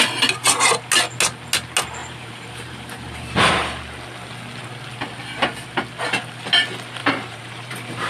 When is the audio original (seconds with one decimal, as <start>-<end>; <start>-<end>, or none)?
0.0-2.0; 3.5-7.0